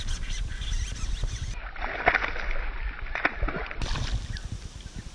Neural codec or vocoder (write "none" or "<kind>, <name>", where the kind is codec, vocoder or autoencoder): none